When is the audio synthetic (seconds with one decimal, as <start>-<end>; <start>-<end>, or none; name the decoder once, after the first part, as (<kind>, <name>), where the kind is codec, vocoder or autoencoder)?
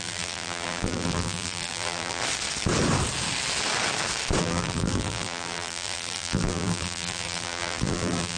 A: 0.0-2.2 (vocoder, BigVGAN v2); 4.4-8.4